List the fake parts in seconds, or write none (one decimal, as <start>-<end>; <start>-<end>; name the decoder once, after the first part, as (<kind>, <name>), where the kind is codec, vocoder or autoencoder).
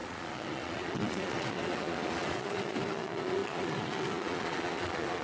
0.0-5.2 (vocoder, Vocos)